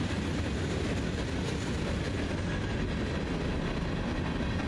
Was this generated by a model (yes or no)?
no